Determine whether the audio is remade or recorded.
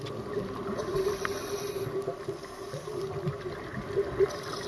recorded